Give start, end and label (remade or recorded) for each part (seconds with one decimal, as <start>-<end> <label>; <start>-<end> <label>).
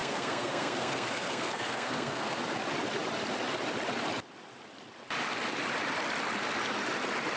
0.0-2.4 remade; 2.4-7.4 recorded